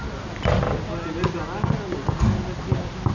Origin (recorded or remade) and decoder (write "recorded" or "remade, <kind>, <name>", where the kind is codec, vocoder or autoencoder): recorded